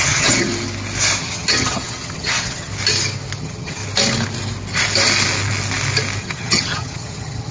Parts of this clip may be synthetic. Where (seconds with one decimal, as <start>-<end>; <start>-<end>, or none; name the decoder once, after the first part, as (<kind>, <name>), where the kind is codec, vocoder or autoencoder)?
0.0-0.5 (vocoder, HiFi-GAN); 1.2-2.7; 3.4-3.8; 6.2-7.5